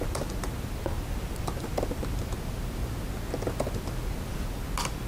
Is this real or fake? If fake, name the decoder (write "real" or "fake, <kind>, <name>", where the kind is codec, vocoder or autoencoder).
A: real